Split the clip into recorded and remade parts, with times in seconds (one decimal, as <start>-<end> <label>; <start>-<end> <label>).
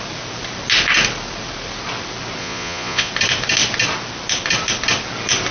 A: 0.0-2.4 recorded; 2.4-3.1 remade; 3.1-5.5 recorded